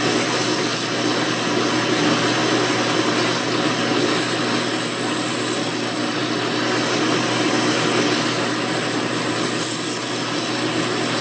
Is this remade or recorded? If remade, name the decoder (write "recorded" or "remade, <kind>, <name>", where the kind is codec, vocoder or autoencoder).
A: recorded